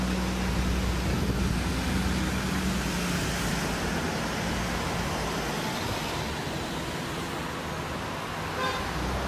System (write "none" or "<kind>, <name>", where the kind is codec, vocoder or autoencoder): none